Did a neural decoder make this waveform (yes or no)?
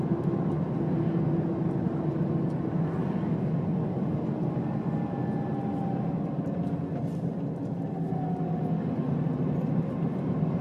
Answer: no